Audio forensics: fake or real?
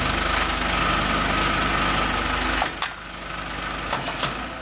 real